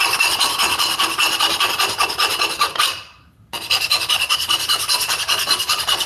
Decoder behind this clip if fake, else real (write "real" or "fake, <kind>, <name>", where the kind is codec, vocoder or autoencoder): real